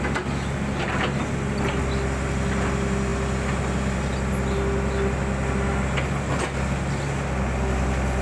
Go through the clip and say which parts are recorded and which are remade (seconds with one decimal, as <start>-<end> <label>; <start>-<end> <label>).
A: 0.0-8.2 recorded